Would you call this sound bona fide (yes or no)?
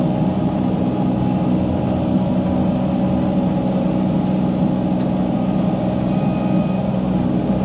yes